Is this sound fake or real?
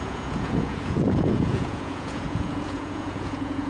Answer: fake